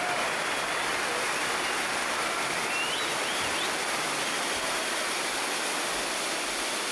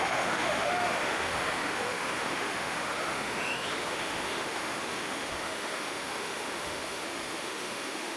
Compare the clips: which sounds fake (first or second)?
second